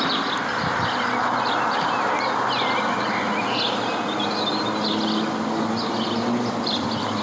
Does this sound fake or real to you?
real